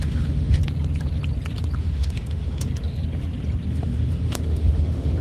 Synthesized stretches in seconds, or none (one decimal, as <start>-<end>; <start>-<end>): 0.0-0.6; 1.8-2.7; 3.7-5.2